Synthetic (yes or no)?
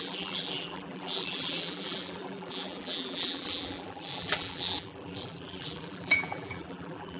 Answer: yes